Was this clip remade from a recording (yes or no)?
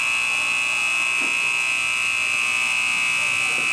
no